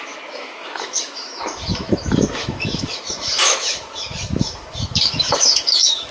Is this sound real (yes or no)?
no